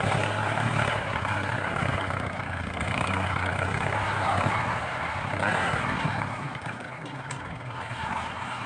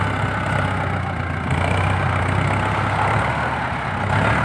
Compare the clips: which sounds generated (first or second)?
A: first